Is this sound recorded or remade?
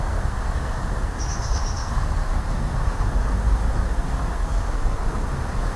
remade